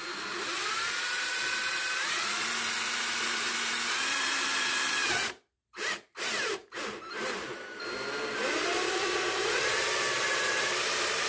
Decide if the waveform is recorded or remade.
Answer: remade